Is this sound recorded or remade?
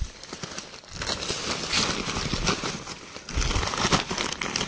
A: recorded